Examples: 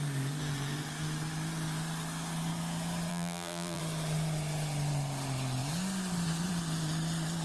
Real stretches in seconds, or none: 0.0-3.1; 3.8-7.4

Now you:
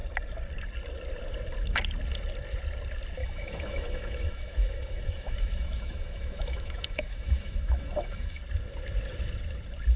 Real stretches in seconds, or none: 0.0-3.2; 8.4-10.0

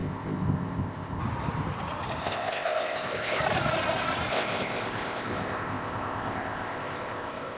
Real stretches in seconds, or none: 1.2-2.2; 3.4-4.3